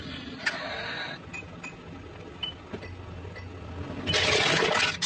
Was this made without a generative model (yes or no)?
yes